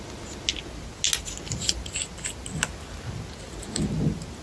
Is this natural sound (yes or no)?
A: yes